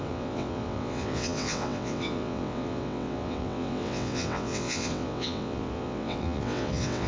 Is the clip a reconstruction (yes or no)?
yes